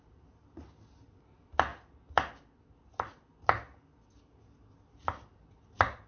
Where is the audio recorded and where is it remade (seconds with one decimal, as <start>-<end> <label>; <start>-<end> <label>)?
0.0-6.1 recorded

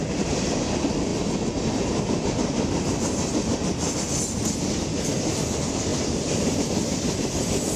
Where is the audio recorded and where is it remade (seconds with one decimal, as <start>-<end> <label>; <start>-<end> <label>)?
0.0-7.8 recorded